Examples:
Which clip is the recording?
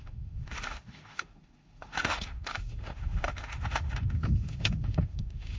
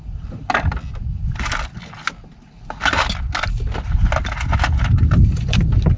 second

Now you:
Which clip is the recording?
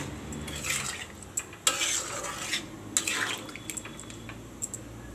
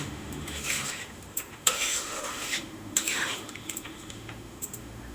first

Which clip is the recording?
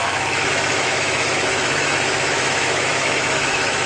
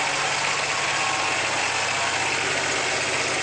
second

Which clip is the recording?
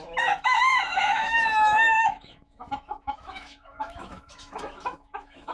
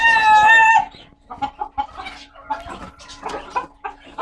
second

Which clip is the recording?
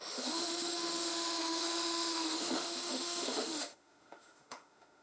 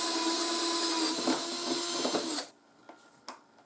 second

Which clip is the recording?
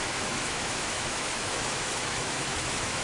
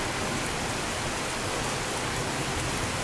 second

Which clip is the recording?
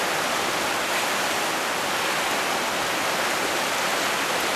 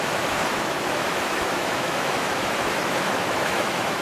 first